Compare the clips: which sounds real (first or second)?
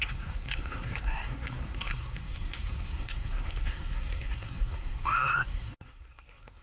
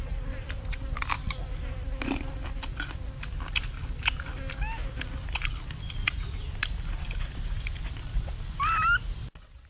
second